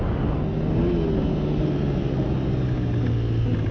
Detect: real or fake real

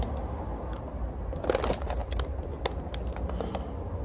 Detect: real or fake real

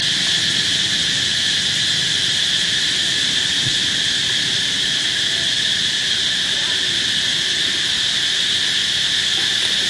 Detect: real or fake real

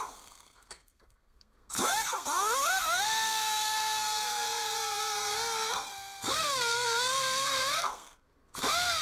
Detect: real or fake fake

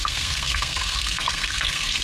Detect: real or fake fake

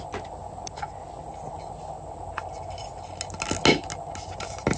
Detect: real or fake real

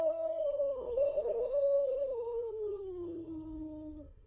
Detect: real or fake fake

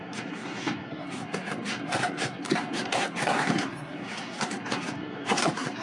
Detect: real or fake fake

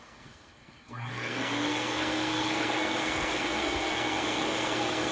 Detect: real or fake fake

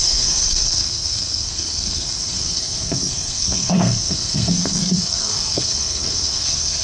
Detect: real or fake fake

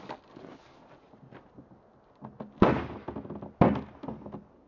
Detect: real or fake real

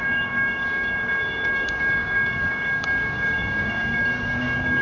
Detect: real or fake fake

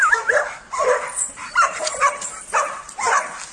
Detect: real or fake real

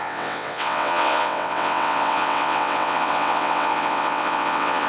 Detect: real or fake fake